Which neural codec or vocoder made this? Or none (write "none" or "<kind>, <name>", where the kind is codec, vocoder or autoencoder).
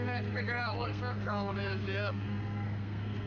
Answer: codec, SNAC